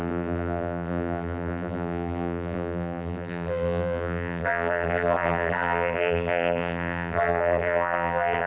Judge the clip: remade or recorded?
remade